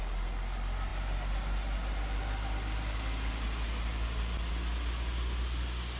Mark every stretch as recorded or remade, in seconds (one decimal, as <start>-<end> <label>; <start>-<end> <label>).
0.0-6.0 recorded